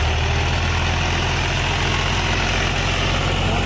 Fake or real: real